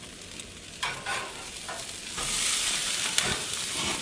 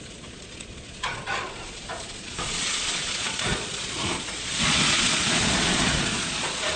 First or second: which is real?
first